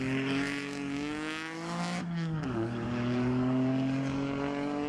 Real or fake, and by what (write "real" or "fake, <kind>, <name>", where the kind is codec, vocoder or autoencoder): fake, codec, DAC